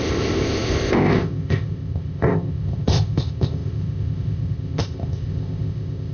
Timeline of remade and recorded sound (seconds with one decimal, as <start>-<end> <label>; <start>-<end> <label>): 0.0-6.1 remade